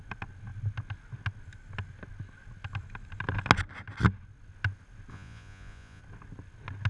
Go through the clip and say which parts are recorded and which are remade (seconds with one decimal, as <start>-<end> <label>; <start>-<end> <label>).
0.0-5.1 recorded; 5.1-6.0 remade; 6.0-6.9 recorded